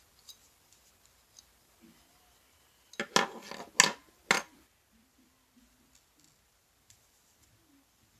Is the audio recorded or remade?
recorded